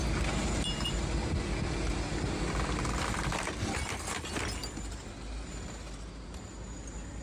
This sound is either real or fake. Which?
real